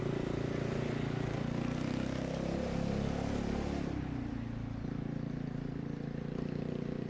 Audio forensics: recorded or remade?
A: recorded